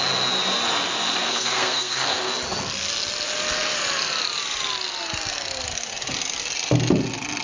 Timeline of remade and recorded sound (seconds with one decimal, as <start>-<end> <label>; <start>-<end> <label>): 0.0-1.2 recorded; 1.2-2.3 remade; 2.3-7.4 recorded